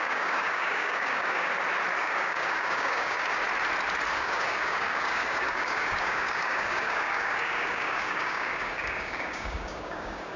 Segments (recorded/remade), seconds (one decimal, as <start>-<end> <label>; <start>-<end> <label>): 0.0-1.5 remade; 1.5-2.0 recorded; 2.0-3.4 remade; 3.4-4.1 recorded; 4.1-10.4 remade